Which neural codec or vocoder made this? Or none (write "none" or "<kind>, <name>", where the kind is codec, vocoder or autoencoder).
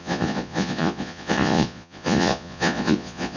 vocoder, Vocos